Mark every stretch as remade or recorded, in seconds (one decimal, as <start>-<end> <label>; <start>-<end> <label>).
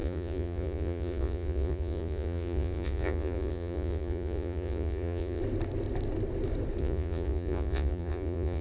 0.0-5.4 remade; 5.4-6.8 recorded; 6.8-8.6 remade